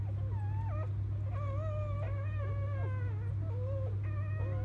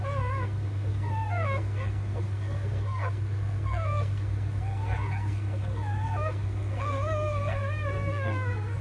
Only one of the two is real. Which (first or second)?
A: first